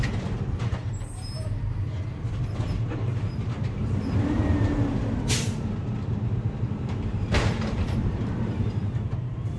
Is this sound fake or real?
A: fake